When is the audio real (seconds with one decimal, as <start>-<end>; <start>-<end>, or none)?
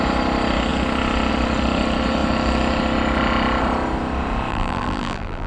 0.0-4.5